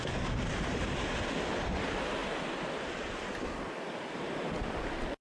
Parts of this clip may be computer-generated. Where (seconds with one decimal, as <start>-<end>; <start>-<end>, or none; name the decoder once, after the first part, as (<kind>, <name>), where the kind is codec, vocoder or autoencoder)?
2.2-5.2 (vocoder, BigVGAN v2)